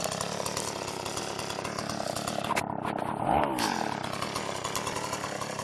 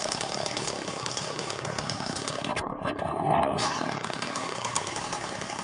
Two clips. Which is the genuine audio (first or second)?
first